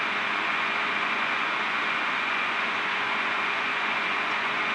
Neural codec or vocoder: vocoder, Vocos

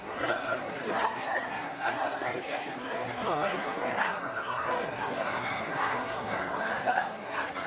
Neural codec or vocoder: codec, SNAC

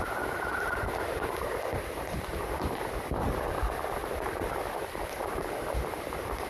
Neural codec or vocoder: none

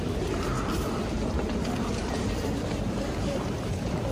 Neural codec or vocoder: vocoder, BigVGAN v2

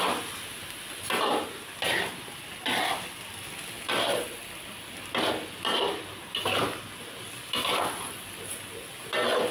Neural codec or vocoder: none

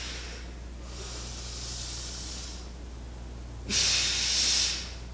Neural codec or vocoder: none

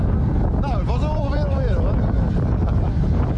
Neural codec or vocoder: none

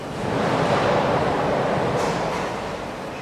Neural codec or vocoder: vocoder, BigVGAN v2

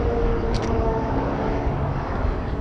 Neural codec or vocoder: codec, DAC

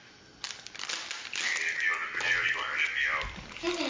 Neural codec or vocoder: none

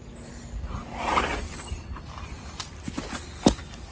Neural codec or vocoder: none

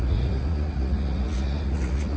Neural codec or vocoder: vocoder, Vocos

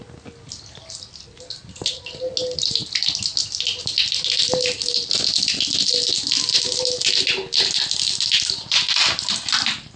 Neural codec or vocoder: none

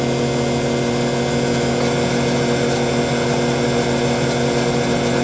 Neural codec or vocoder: none